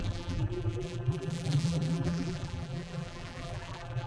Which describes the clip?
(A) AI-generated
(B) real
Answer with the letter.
A